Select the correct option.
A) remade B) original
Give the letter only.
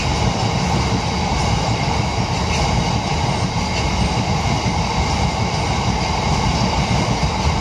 B